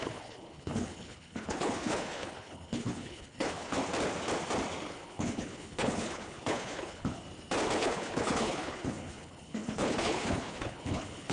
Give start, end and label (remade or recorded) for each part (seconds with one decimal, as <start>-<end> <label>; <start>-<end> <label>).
0.0-3.8 remade; 3.8-4.9 recorded; 4.9-7.2 remade; 7.2-7.8 recorded; 7.8-11.3 remade